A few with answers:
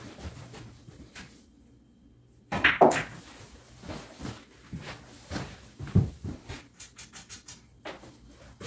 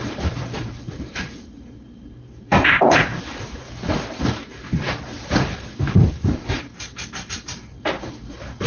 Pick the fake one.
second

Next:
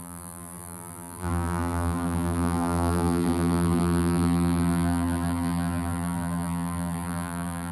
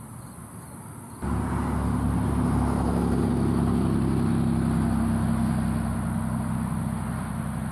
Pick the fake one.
first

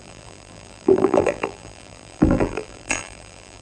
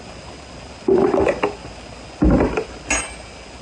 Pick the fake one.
first